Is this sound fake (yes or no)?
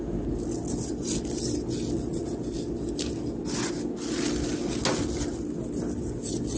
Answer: no